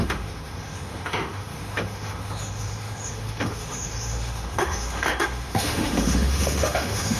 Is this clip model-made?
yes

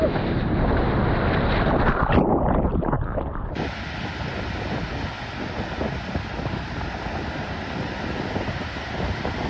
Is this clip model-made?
no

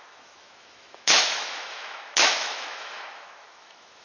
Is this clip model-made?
yes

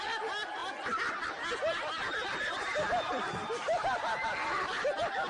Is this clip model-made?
no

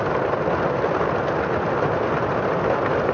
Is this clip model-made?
no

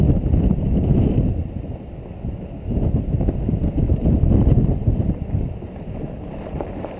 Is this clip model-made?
no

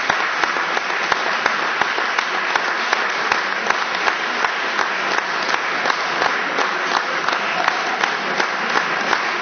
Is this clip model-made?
no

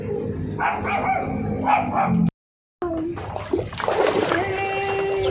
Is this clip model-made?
no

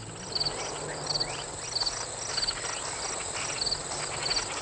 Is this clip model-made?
no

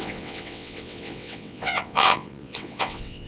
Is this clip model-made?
yes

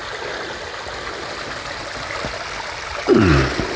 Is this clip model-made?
no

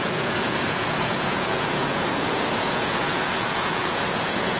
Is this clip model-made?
yes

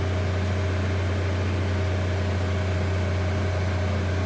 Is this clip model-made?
no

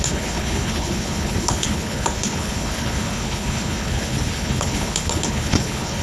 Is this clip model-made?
yes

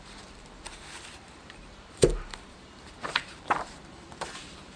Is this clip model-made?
yes